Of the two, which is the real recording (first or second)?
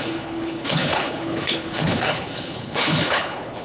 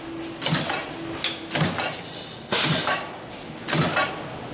second